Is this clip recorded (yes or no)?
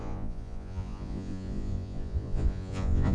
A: no